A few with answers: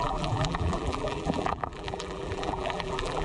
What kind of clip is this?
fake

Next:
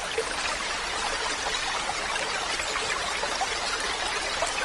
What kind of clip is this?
real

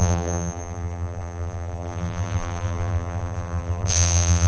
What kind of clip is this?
fake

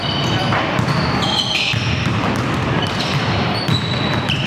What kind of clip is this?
fake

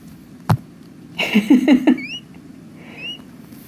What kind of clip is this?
real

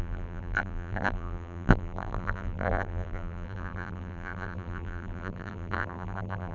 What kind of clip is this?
fake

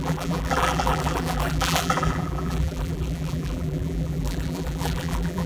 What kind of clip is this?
fake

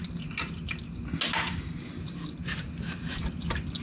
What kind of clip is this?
real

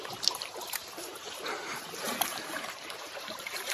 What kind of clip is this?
fake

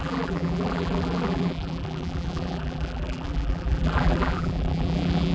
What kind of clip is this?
fake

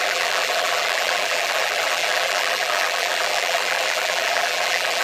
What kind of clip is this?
fake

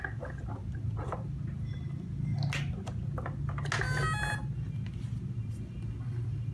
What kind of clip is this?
real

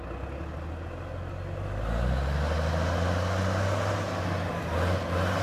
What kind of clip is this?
real